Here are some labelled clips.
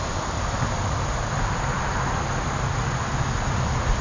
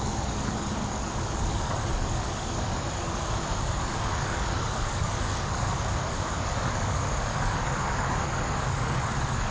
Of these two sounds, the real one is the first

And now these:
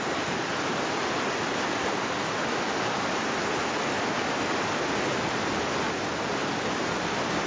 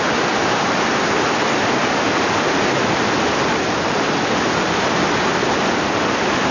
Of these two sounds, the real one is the first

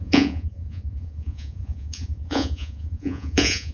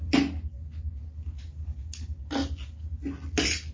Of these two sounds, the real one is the second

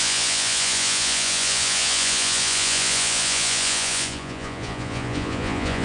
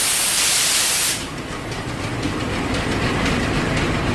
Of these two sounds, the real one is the second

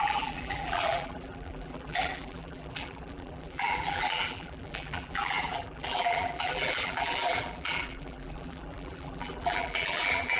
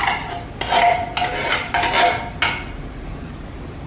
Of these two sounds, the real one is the second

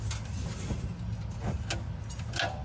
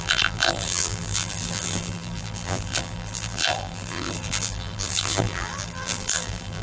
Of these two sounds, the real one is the first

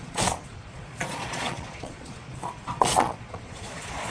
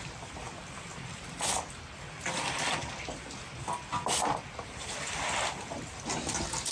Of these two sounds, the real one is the second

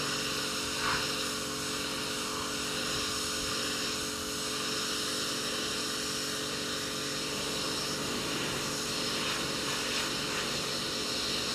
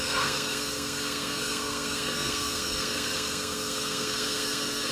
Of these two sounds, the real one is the first